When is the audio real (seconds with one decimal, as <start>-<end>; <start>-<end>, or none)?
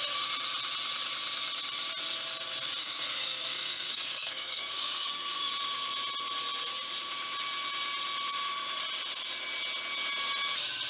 0.0-2.8; 5.5-10.9